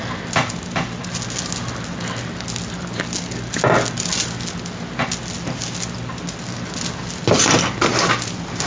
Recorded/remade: recorded